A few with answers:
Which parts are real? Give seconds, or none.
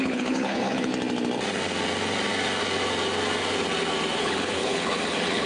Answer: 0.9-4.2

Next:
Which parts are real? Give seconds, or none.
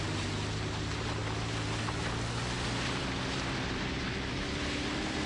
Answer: 0.0-5.3